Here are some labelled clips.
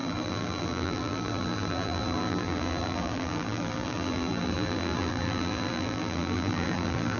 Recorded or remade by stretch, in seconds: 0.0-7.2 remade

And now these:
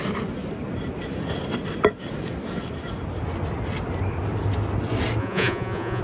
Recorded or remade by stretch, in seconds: 0.0-5.2 recorded; 5.2-6.0 remade

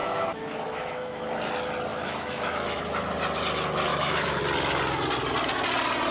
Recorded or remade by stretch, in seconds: 0.0-1.2 remade; 1.2-1.9 recorded; 1.9-2.8 remade; 2.8-3.9 recorded; 3.9-4.4 remade; 4.4-6.1 recorded